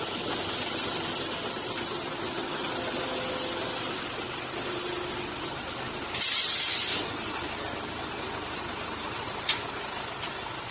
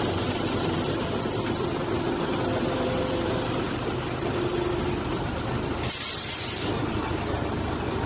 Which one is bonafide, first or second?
first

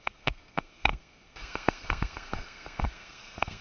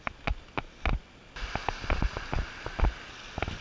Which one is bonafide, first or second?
second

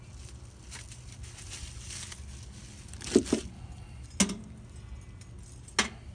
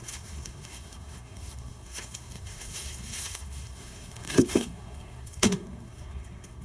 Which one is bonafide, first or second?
first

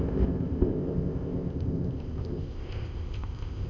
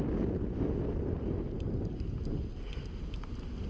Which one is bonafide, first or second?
second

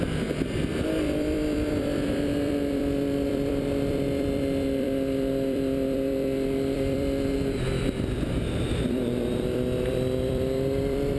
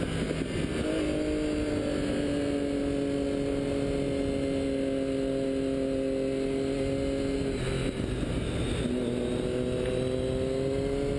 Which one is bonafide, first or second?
second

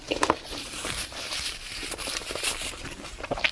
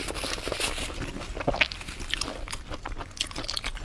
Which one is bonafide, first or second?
second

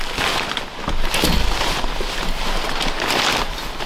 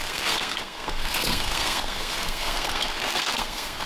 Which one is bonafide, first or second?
first